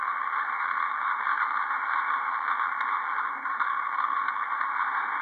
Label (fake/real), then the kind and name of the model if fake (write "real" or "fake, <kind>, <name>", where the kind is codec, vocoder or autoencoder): fake, autoencoder, DAC-VAE